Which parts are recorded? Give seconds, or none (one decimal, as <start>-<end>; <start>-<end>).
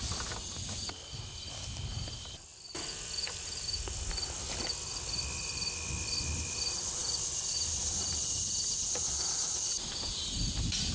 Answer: 0.0-10.9